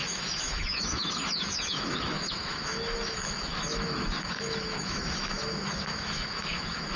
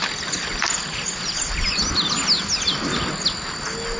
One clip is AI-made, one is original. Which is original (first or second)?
second